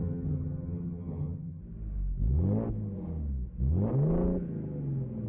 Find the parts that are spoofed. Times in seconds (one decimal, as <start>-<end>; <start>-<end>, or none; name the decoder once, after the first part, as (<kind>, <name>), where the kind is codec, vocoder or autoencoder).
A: 0.0-1.6 (vocoder, HiFi-GAN)